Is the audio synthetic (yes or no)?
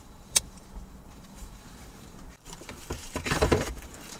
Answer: yes